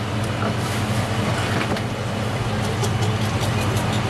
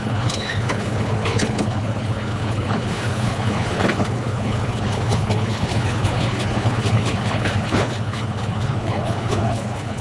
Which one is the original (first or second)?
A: first